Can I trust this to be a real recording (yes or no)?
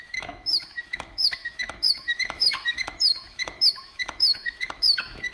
no